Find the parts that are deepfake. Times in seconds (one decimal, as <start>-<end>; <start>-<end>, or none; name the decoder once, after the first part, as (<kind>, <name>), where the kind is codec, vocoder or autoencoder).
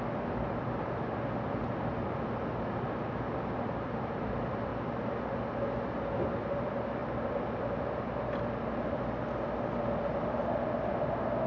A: none